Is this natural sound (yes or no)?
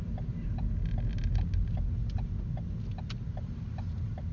yes